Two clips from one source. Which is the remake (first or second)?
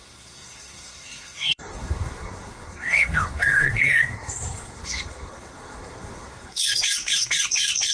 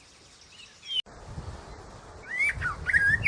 first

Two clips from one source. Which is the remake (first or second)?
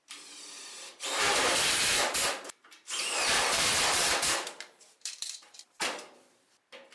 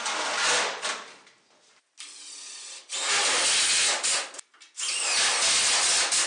first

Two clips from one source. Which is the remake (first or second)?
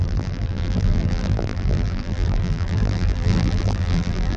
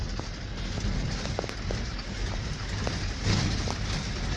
first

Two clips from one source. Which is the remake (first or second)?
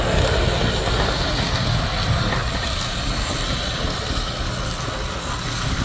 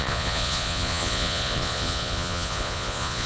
second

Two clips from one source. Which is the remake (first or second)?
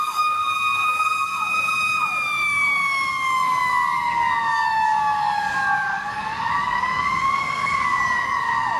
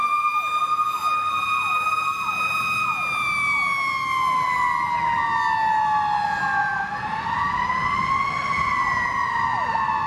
first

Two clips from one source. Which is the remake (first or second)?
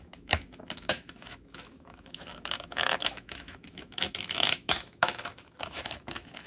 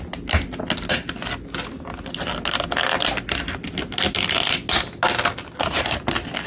first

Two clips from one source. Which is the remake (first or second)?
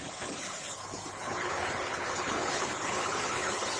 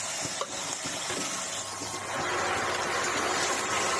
first